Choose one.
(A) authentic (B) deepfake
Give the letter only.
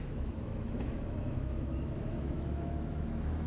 B